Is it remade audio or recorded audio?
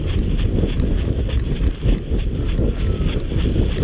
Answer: recorded